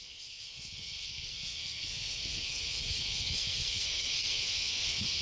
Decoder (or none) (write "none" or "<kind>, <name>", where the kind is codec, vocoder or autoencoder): codec, SNAC